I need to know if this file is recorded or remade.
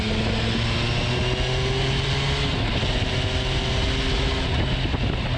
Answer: recorded